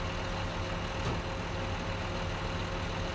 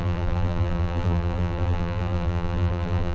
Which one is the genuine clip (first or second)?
first